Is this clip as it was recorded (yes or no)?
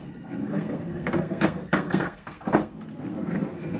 no